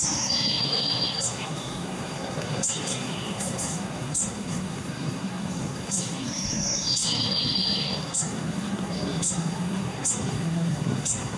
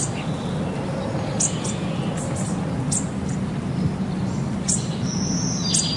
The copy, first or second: first